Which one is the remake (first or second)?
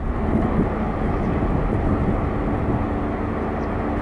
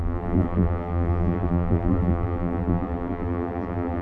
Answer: second